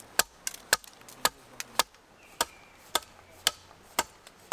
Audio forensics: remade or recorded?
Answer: recorded